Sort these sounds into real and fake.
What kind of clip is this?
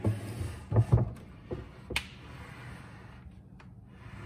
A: real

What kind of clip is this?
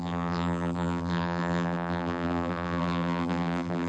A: fake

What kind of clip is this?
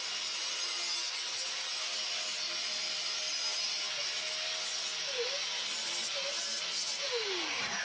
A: real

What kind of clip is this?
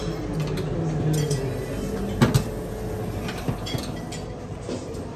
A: real